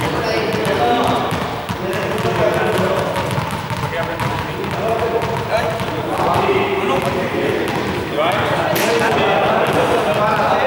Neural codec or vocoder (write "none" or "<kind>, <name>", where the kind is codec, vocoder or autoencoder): none